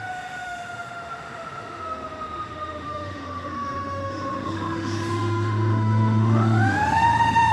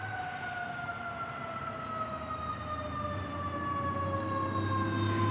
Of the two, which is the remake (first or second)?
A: first